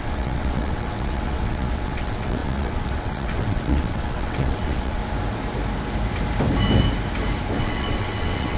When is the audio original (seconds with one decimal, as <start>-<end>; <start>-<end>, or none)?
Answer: 5.0-7.6

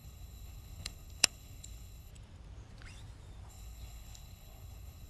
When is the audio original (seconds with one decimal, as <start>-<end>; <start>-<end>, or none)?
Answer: 2.1-3.5

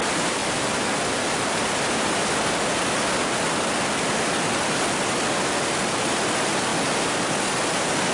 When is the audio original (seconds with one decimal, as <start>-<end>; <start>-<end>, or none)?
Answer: 0.0-8.1

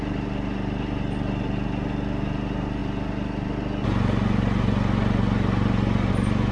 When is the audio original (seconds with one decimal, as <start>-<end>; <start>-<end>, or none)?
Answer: 0.0-6.5

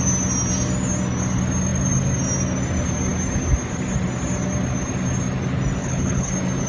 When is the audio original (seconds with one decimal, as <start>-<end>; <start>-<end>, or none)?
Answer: 0.0-5.8; 6.3-6.7

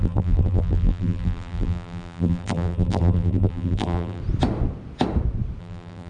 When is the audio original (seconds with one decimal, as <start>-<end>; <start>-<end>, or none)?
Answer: 4.2-5.6

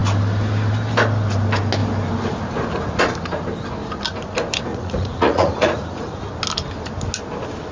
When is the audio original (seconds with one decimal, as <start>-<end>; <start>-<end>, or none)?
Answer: 0.0-4.7; 6.3-7.7